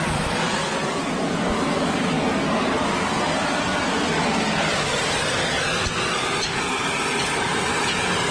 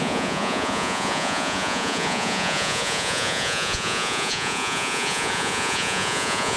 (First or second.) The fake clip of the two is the second